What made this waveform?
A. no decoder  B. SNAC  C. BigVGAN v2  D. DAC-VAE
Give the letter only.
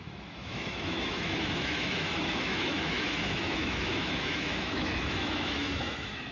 D